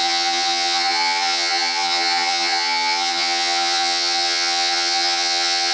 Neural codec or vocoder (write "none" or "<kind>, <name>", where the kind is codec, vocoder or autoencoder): vocoder, HiFi-GAN